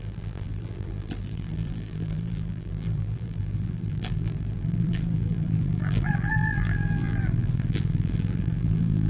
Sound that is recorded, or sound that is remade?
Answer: remade